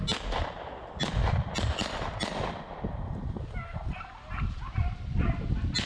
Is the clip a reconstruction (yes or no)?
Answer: no